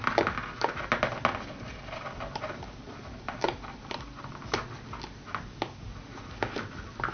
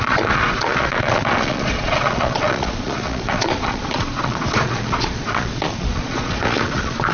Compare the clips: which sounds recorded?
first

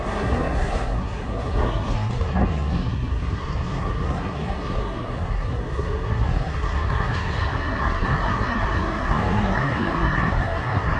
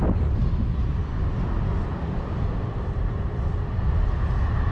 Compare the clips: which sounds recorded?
second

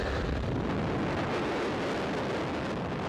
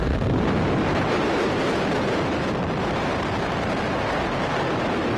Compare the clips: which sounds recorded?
first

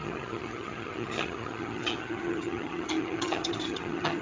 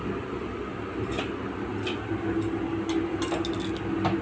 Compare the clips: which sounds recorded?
second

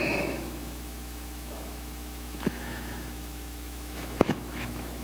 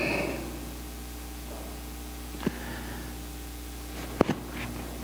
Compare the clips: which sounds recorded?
second